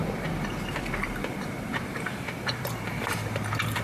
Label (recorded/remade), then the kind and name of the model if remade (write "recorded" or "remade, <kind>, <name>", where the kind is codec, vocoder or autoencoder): remade, vocoder, BigVGAN v2